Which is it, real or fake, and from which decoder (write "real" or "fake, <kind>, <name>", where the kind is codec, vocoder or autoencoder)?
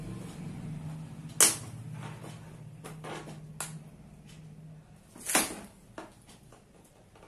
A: real